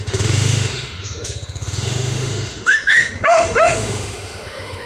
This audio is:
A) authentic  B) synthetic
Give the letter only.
B